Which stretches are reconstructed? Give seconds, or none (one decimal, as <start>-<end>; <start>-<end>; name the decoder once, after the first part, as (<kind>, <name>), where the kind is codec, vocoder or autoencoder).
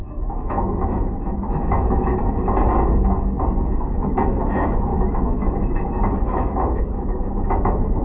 0.0-2.1 (autoencoder, DAC-VAE); 3.9-8.0